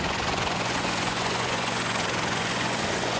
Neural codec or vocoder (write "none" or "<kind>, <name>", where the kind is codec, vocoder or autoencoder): vocoder, Vocos